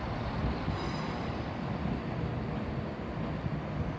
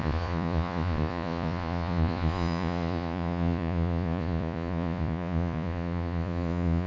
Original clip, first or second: first